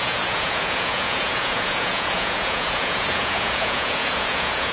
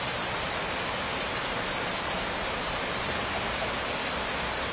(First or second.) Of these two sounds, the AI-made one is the first